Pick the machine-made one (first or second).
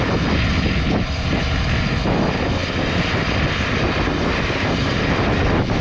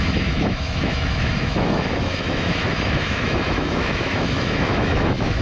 second